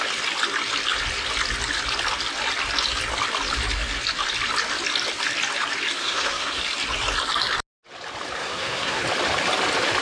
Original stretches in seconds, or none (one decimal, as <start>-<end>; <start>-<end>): 0.0-6.0; 6.6-8.4; 9.0-10.0